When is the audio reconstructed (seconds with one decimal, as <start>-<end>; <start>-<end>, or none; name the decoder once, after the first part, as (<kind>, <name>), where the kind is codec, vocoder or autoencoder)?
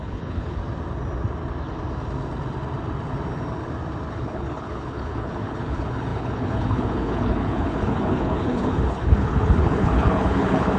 0.0-0.6 (codec, HILCodec); 4.1-10.8